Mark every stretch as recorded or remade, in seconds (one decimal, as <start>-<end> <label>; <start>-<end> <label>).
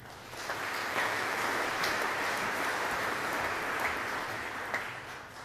0.0-0.8 recorded; 0.8-1.4 remade; 1.4-5.4 recorded